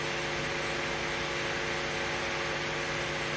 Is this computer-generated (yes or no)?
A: no